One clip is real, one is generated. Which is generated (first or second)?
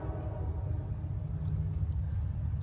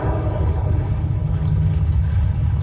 second